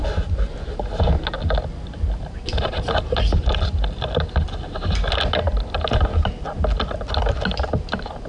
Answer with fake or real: real